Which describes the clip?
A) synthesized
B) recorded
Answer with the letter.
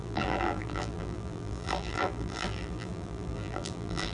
A